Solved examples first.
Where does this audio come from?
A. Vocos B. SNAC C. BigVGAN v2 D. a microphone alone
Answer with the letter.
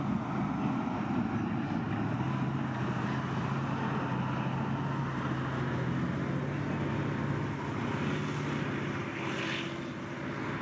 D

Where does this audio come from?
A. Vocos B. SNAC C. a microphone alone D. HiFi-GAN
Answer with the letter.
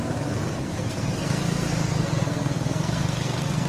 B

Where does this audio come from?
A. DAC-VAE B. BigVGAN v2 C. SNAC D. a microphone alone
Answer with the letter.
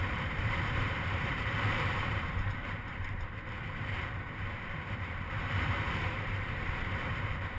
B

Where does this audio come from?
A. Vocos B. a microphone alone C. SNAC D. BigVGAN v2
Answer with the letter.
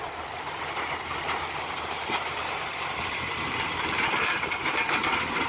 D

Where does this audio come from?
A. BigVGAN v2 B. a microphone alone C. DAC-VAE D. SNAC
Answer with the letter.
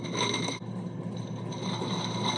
B